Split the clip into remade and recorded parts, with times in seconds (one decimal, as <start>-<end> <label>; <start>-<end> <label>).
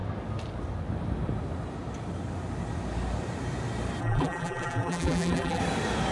0.0-4.0 recorded; 4.0-5.6 remade; 5.6-6.1 recorded